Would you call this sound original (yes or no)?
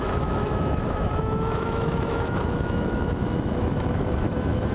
no